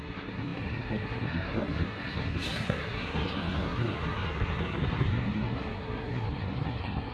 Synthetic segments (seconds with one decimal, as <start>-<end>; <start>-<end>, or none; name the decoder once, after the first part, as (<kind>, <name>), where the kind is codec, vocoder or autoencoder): 0.0-7.1 (codec, SNAC)